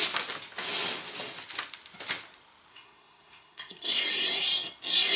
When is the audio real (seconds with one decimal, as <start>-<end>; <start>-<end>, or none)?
0.0-2.7; 4.0-5.2